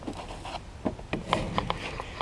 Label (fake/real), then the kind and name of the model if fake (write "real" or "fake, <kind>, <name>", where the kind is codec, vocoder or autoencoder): real